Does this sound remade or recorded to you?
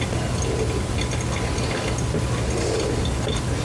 recorded